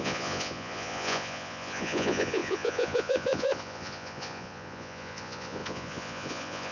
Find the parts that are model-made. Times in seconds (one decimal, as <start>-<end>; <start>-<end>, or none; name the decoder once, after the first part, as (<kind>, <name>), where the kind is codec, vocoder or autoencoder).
0.0-6.7 (vocoder, Vocos)